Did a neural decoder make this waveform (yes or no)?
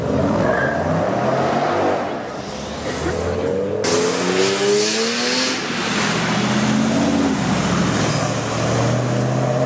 no